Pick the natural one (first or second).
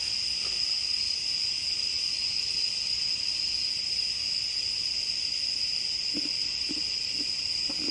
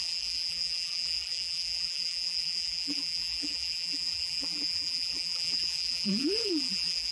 first